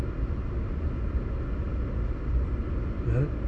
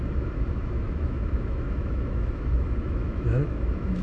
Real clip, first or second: first